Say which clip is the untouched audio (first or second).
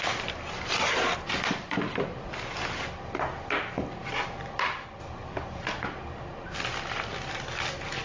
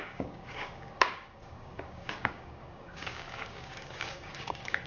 first